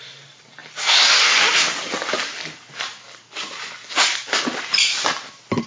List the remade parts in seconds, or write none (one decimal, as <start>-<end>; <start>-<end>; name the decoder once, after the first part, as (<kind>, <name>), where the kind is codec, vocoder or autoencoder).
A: none